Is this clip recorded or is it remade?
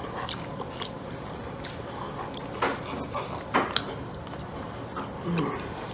recorded